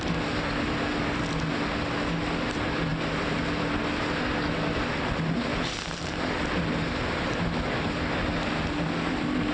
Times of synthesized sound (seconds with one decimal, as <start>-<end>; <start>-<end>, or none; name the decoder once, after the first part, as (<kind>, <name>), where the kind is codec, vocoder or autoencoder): none